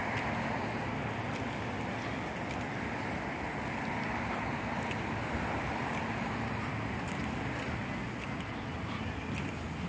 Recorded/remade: recorded